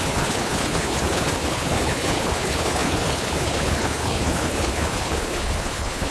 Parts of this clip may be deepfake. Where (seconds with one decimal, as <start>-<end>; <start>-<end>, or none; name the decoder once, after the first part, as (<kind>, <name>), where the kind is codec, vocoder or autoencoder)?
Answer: 0.0-6.1 (codec, HILCodec)